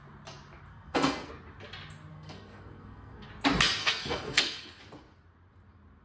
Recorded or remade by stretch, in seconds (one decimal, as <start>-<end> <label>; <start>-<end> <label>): 0.0-0.7 recorded; 0.7-1.3 remade; 1.3-2.1 recorded; 2.1-3.3 remade; 3.3-3.8 recorded; 3.8-4.8 remade; 4.8-6.0 recorded